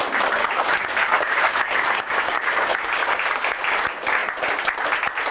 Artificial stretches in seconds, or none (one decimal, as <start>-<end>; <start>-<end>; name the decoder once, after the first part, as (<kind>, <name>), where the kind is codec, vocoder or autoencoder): 0.4-3.6 (codec, DAC)